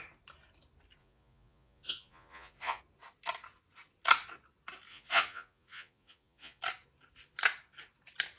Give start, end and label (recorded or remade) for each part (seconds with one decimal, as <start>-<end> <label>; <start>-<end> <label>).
0.0-1.0 recorded; 1.0-2.8 remade; 2.8-4.9 recorded; 4.9-6.6 remade; 6.6-8.4 recorded